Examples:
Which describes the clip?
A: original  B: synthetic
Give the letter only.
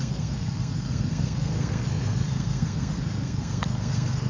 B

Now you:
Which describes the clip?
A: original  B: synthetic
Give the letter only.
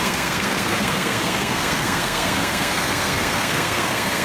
B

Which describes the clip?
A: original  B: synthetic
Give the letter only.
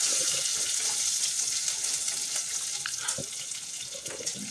A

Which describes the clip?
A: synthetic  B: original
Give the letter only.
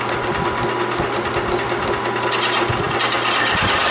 B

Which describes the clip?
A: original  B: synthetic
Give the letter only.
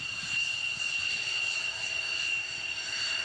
A